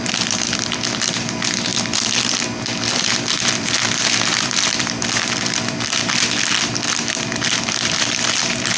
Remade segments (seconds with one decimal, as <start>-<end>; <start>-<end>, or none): 0.0-1.7; 2.6-8.8